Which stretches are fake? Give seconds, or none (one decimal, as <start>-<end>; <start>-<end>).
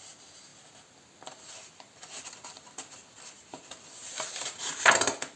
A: none